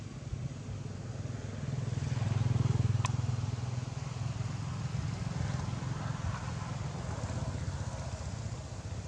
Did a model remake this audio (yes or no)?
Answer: no